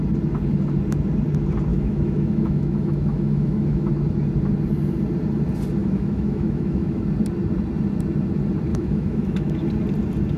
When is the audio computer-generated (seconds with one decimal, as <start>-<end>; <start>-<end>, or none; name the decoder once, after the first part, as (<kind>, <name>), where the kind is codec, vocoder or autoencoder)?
1.7-3.9 (autoencoder, DAC-VAE); 5.8-7.0; 8.7-9.5